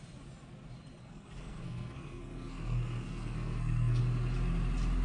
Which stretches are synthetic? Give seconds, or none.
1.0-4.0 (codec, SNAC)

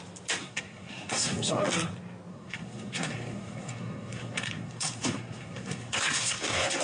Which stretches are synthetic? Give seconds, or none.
0.4-1.6 (codec, SNAC); 2.3-6.8

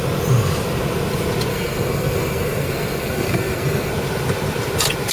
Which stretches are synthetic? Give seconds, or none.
1.5-3.9 (codec, SNAC)